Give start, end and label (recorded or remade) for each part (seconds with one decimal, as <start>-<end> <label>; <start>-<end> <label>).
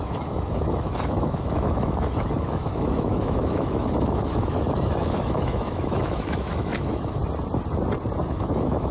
0.0-7.2 remade; 7.2-8.3 recorded; 8.3-8.9 remade